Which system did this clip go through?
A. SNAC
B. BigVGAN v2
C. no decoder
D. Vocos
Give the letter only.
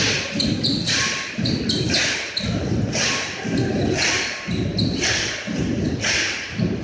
C